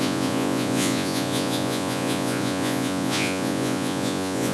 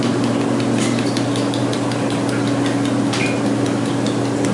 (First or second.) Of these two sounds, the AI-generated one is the first